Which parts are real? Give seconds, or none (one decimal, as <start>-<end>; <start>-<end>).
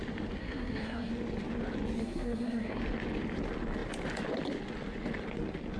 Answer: 0.0-0.4; 1.1-2.0; 2.8-5.8